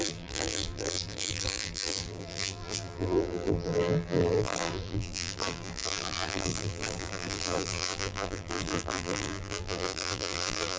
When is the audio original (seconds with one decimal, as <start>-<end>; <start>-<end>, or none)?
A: none